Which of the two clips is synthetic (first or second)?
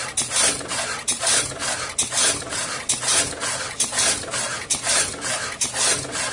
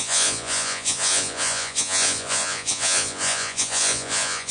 second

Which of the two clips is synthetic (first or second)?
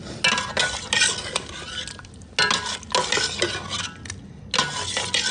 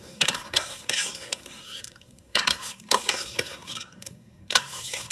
second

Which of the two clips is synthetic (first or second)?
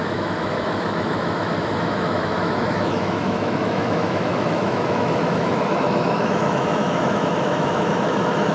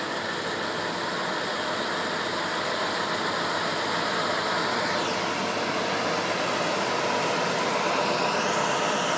first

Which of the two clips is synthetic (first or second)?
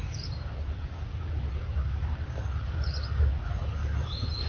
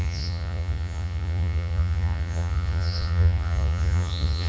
second